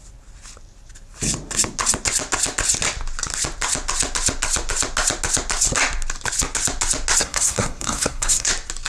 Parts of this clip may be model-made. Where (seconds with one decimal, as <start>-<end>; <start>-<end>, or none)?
7.2-8.5